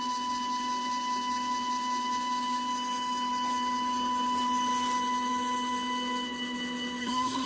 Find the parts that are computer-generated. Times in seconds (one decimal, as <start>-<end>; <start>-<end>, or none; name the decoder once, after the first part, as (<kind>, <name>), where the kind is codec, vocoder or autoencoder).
7.0-7.5 (codec, SNAC)